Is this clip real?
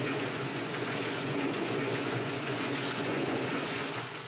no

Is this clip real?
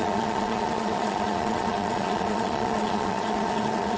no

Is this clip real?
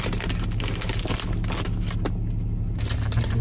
yes